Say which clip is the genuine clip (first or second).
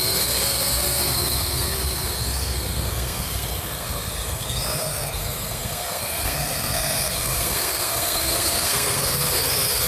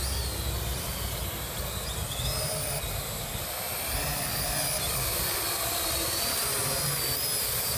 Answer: second